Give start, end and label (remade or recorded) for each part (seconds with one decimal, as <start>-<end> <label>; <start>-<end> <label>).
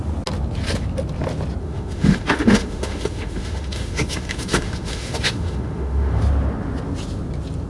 0.0-1.6 recorded; 1.6-6.2 remade; 6.2-7.7 recorded